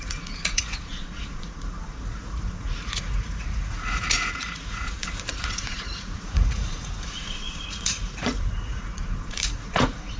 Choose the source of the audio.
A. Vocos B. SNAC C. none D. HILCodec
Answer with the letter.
A